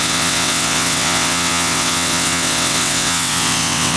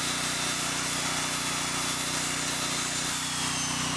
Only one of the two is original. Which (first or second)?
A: second